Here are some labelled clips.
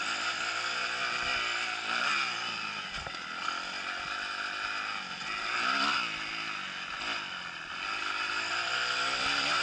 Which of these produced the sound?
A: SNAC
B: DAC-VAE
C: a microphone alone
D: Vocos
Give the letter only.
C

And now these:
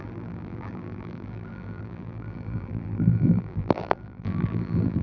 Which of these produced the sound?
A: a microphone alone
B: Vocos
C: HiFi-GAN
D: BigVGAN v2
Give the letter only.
D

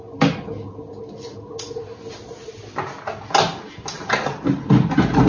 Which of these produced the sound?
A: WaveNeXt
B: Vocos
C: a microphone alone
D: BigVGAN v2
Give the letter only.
C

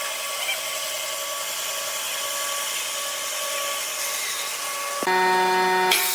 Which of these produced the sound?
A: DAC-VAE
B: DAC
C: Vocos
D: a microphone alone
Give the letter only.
D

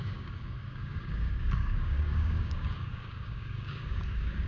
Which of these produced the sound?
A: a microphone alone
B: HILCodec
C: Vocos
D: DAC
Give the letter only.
D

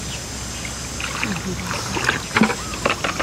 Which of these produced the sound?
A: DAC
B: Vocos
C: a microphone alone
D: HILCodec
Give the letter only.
C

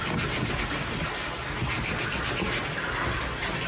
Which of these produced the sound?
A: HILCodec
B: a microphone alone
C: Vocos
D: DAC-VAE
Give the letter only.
B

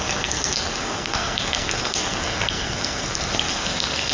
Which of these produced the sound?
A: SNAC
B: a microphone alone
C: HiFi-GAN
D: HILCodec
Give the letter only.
A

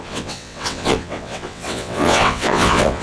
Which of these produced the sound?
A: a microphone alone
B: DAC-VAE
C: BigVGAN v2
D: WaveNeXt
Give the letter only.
D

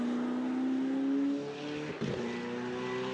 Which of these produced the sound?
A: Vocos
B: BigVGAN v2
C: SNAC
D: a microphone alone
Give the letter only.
D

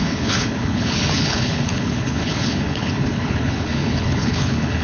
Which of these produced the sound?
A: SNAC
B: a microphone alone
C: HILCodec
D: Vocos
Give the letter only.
C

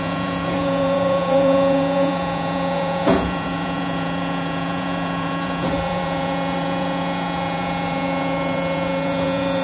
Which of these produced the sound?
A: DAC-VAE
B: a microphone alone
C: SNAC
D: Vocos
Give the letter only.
D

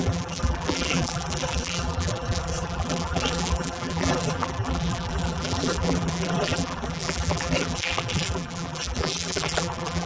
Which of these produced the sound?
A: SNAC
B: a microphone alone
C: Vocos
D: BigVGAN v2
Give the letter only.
D